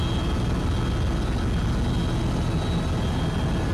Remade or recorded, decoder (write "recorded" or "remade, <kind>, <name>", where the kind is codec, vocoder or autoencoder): recorded